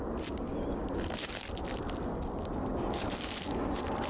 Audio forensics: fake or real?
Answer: real